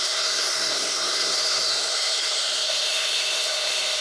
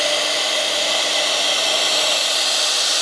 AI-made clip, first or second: first